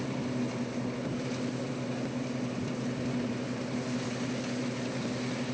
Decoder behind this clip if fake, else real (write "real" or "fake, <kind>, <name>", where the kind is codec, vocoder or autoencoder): real